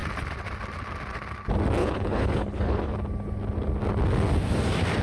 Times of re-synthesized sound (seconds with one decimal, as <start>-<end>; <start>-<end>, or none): 1.8-2.9